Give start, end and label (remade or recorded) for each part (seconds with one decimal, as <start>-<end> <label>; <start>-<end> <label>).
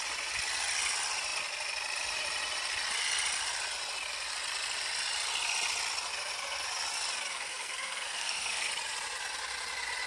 0.0-7.3 recorded; 7.3-8.7 remade; 8.7-10.1 recorded